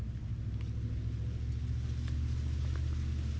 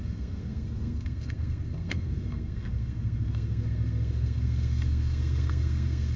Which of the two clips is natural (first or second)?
first